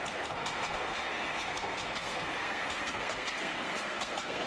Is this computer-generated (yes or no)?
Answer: yes